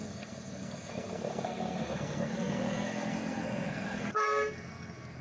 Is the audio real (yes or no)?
no